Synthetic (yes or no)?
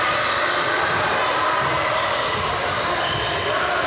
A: no